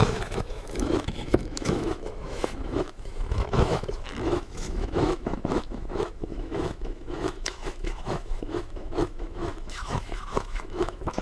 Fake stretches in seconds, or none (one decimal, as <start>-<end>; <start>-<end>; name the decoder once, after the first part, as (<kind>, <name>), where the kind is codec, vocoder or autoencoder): 0.0-11.2 (autoencoder, DAC-VAE)